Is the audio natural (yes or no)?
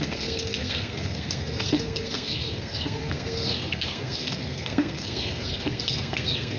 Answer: no